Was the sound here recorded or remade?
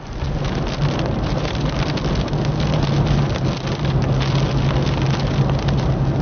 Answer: recorded